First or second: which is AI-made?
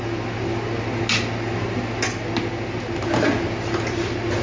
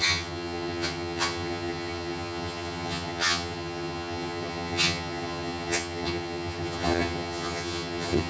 second